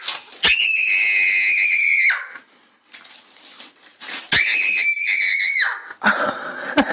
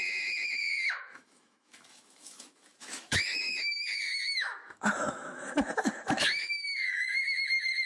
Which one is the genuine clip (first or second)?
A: first